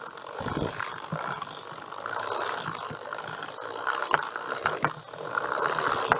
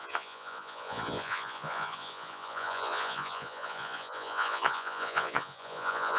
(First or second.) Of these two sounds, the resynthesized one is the second